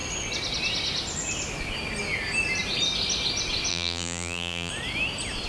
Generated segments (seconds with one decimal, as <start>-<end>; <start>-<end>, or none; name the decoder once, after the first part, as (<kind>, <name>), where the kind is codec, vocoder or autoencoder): 3.7-4.7 (vocoder, BigVGAN v2)